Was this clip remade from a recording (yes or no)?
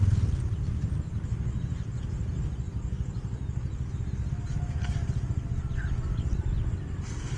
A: no